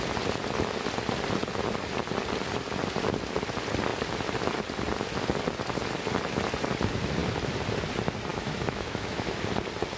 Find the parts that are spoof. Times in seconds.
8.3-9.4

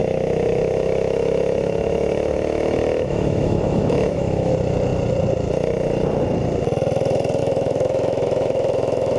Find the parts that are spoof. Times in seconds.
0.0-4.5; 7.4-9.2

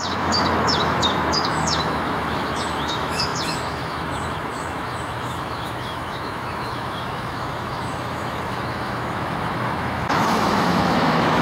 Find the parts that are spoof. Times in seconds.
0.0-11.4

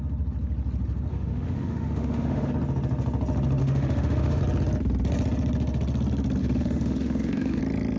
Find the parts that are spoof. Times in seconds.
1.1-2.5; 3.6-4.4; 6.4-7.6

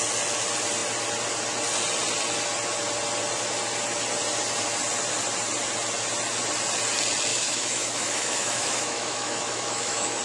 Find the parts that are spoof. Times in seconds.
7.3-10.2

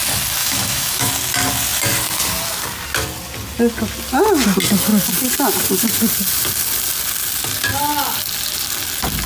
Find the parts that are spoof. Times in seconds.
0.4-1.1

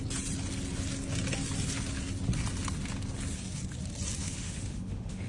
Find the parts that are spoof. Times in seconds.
4.2-5.3

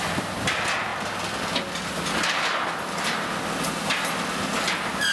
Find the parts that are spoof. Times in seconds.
none